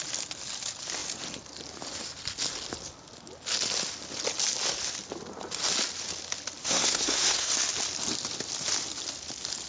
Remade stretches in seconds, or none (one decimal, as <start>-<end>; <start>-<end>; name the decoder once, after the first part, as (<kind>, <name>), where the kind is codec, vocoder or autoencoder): 6.6-7.5 (codec, SNAC)